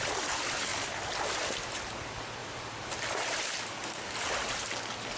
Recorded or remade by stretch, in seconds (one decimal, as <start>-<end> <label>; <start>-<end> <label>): 0.0-2.4 recorded; 2.4-3.4 remade; 3.4-5.2 recorded